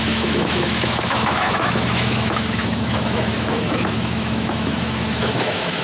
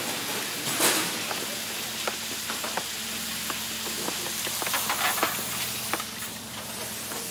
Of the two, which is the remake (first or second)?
first